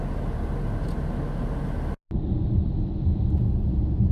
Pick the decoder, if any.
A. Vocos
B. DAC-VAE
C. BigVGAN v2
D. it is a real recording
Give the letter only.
D